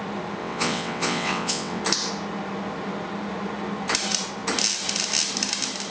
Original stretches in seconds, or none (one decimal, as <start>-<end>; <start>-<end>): 0.0-0.4; 1.8-5.9